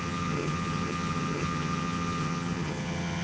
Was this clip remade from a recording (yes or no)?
yes